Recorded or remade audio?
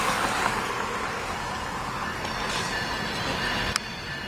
recorded